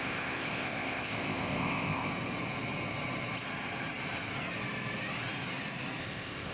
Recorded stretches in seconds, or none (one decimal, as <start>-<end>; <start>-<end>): 2.1-6.0